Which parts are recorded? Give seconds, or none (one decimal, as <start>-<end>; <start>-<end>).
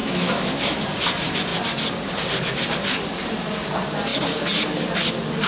0.8-5.5